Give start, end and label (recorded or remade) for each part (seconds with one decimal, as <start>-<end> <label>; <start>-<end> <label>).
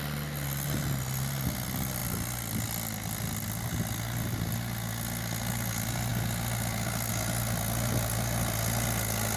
0.0-9.4 recorded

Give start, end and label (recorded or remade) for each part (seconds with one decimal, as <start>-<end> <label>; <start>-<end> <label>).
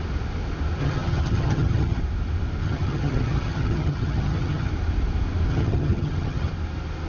0.0-0.8 recorded; 0.8-2.0 remade; 2.0-2.6 recorded; 2.6-4.7 remade; 4.7-5.5 recorded; 5.5-6.5 remade; 6.5-7.1 recorded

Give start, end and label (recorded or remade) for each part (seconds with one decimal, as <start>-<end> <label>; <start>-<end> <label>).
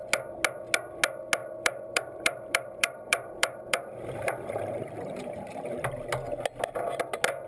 0.0-1.4 recorded; 1.4-5.9 remade; 5.9-7.5 recorded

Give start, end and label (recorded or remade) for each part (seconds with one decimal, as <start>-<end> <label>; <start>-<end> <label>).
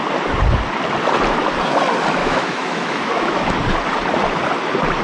0.0-2.2 recorded; 2.2-3.6 remade; 3.6-5.0 recorded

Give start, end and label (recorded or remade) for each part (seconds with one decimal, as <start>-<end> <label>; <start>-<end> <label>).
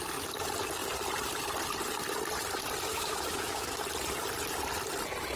0.0-2.9 recorded; 2.9-3.8 remade; 3.8-5.4 recorded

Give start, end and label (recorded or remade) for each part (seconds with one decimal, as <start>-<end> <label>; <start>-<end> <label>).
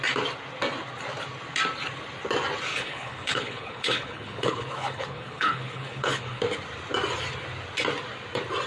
0.0-2.7 recorded; 2.7-6.4 remade; 6.4-8.7 recorded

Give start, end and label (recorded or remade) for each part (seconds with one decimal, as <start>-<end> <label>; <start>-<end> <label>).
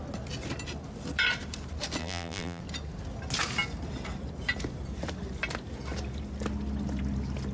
0.0-2.0 recorded; 2.0-2.6 remade; 2.6-7.5 recorded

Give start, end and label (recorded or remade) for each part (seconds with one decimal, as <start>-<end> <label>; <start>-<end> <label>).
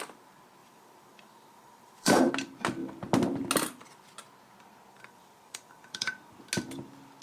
0.0-0.6 recorded; 0.6-2.3 remade; 2.3-4.9 recorded; 4.9-6.1 remade; 6.1-7.2 recorded